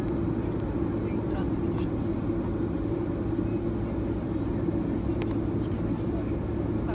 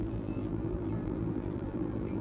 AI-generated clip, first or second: second